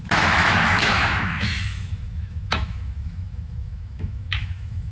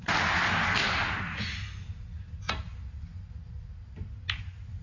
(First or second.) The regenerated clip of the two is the first